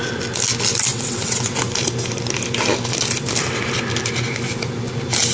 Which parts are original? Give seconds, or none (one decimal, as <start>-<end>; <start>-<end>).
0.0-0.9; 1.5-5.3